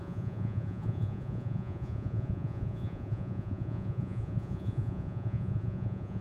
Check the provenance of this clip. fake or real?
fake